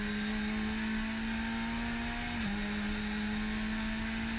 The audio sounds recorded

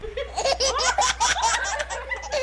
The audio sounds recorded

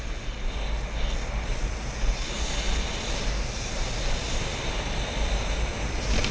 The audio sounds recorded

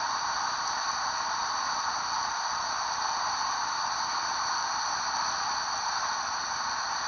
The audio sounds recorded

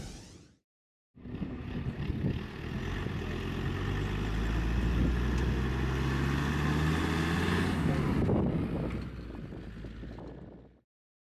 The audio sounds recorded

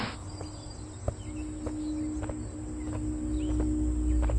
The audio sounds recorded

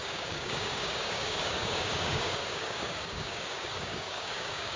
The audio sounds remade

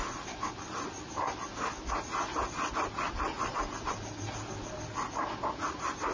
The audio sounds recorded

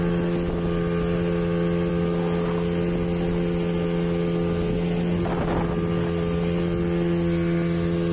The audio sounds recorded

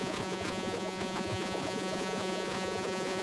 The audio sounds remade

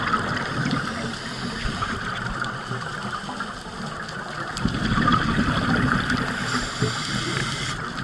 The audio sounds recorded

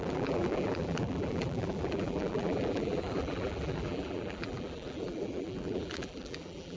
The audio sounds remade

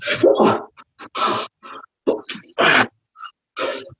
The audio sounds recorded